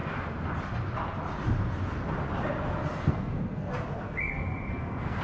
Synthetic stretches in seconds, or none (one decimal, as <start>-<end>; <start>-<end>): 3.1-3.7; 4.7-5.2